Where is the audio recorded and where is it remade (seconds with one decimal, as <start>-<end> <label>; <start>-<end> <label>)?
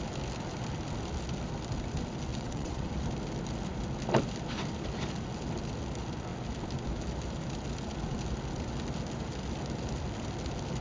0.0-2.3 recorded; 2.3-2.9 remade; 2.9-10.8 recorded